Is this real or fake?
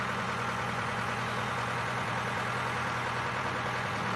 fake